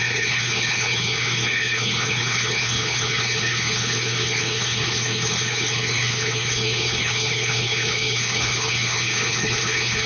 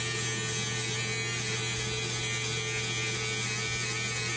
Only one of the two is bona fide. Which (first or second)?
second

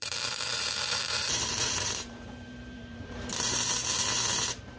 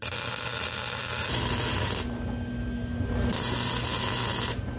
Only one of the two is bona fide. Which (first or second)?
second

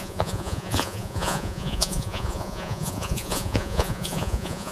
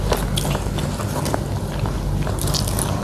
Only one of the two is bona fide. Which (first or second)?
second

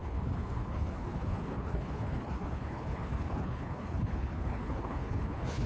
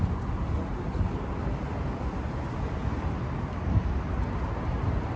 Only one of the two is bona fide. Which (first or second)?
second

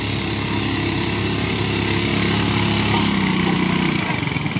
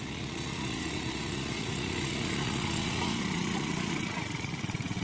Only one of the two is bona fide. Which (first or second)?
first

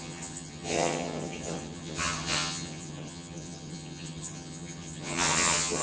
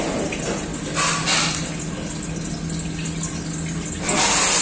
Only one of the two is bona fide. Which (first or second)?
second